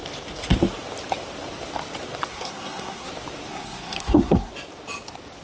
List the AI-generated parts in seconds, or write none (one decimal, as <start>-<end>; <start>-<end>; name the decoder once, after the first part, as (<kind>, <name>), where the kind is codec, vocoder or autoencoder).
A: 2.3-3.1 (codec, SNAC); 3.5-4.5